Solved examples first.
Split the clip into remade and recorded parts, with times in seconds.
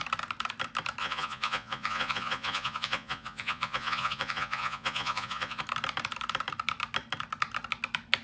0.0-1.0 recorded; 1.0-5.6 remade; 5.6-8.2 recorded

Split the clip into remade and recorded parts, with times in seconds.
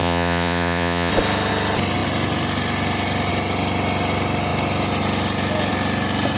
0.0-1.1 remade; 1.1-6.4 recorded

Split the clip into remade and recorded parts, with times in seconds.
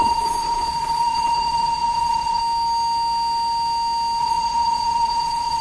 0.0-2.4 remade; 2.4-4.2 recorded; 4.2-5.6 remade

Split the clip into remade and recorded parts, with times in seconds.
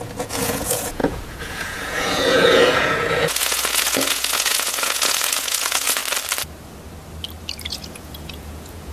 0.0-6.0 remade; 6.0-7.7 recorded; 7.7-8.9 remade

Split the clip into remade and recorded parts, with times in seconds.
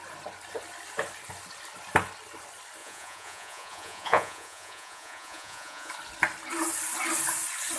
0.0-2.8 recorded; 2.8-5.9 remade; 5.9-7.8 recorded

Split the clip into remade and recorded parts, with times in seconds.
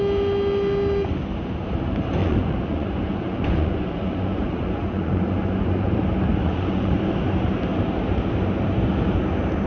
0.0-2.2 recorded; 2.2-5.9 remade; 5.9-6.4 recorded; 6.4-7.0 remade; 7.0-9.7 recorded